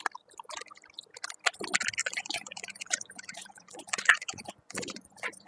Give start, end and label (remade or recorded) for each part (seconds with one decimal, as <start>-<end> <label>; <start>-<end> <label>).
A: 0.0-2.0 recorded; 2.0-5.5 remade